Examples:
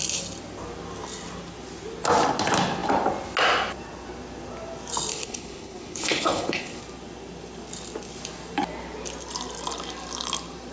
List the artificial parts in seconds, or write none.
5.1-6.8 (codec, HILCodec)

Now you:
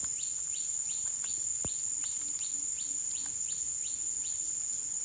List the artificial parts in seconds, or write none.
none

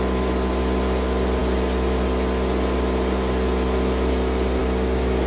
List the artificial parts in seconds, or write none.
none